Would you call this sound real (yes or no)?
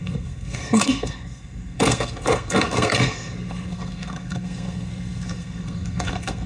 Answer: no